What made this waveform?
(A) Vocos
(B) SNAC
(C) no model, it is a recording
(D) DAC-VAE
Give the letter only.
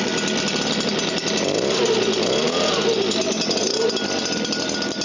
C